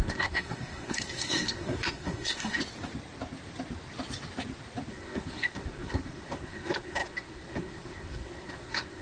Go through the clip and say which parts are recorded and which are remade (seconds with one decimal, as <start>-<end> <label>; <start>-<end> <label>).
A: 0.0-2.6 remade; 2.6-4.9 recorded; 4.9-9.0 remade